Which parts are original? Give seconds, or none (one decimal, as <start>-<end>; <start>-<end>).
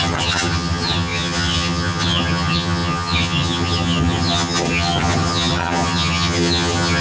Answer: none